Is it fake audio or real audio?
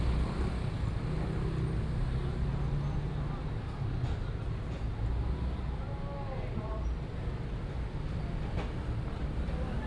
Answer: real